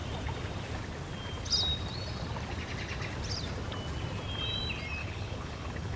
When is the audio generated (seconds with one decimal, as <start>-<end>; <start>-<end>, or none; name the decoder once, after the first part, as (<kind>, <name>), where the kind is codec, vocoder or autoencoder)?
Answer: 5.0-6.0 (codec, HILCodec)